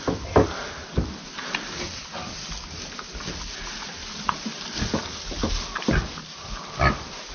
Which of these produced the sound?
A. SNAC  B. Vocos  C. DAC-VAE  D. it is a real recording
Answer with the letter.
D